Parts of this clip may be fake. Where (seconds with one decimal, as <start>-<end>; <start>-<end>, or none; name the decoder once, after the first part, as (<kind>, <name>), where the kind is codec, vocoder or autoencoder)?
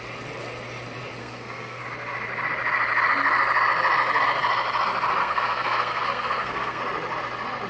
1.2-1.8 (codec, SNAC); 5.2-6.8